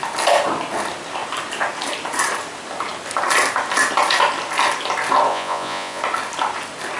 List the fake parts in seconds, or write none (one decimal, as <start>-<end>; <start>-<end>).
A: 5.3-6.0